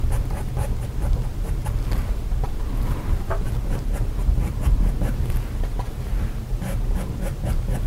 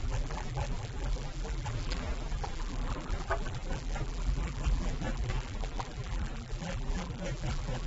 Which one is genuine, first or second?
first